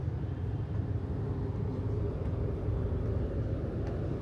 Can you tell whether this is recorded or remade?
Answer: recorded